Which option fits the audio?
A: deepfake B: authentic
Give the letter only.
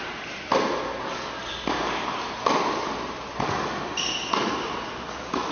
B